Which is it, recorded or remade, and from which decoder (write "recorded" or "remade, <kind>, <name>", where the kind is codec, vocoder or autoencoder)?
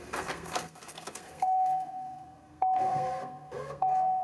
remade, codec, SNAC